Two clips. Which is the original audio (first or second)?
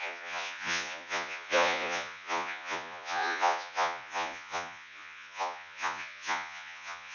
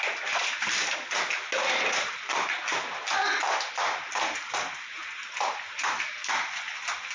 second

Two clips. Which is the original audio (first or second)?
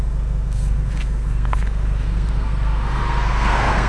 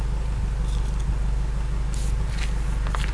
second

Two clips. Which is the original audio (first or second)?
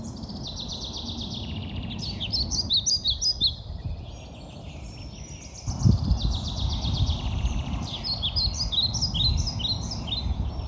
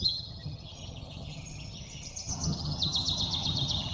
first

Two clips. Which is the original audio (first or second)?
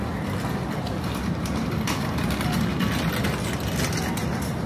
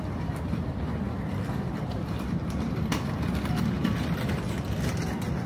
first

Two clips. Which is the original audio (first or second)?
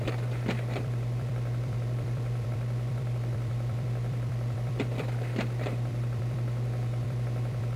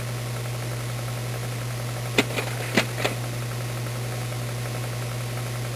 second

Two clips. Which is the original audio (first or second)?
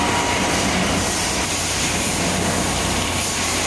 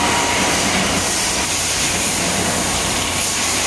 first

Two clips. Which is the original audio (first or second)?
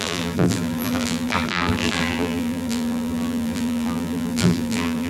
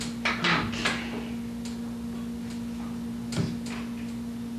second